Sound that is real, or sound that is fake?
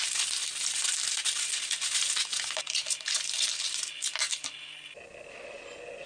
real